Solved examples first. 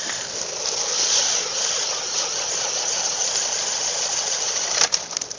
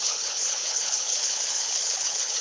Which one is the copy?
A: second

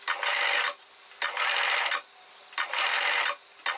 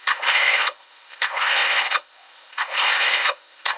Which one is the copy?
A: second